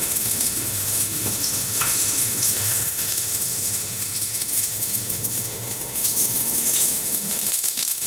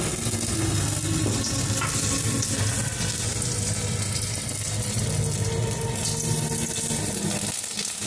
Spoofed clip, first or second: first